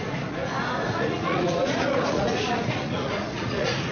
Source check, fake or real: fake